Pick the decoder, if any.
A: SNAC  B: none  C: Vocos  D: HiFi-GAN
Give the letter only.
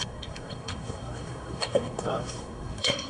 A